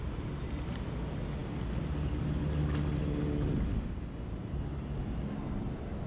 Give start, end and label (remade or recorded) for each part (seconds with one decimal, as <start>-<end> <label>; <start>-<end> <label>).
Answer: 0.0-6.1 recorded